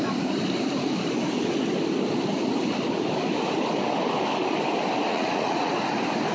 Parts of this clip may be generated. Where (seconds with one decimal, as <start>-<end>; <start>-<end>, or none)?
5.1-5.7